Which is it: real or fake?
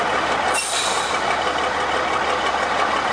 real